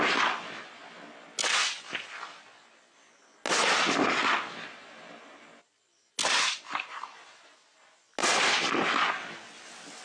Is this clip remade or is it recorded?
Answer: recorded